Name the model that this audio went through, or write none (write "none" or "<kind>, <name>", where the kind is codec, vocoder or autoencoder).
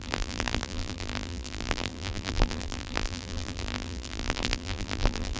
vocoder, BigVGAN v2